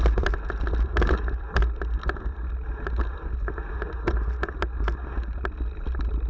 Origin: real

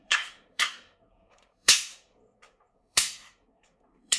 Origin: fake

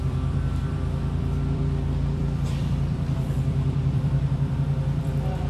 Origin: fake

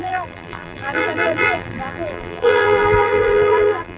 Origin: fake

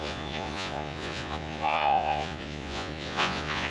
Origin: fake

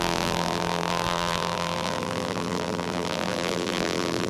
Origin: fake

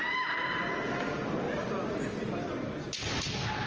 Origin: real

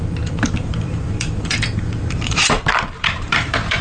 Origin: fake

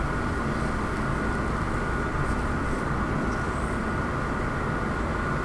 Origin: real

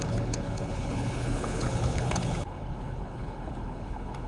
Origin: fake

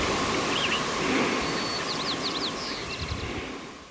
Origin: real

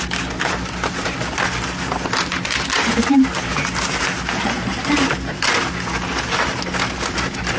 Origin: real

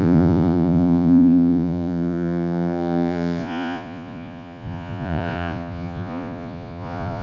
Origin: fake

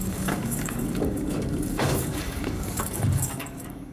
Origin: fake